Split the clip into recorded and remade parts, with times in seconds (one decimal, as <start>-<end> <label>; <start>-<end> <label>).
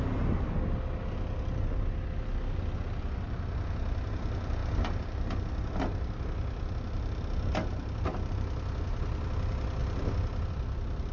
0.0-9.8 recorded; 9.8-10.5 remade; 10.5-11.1 recorded